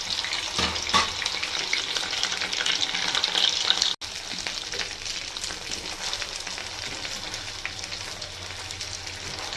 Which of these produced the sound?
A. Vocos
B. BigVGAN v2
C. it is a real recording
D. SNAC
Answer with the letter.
C